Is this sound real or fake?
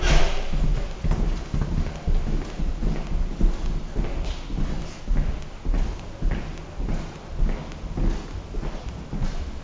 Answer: real